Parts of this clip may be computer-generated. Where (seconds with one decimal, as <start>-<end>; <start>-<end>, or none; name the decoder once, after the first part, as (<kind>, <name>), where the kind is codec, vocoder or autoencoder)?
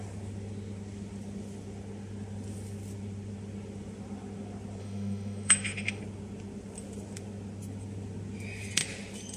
4.8-6.0 (autoencoder, DAC-VAE)